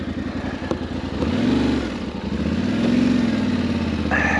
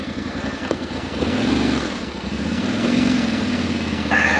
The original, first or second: first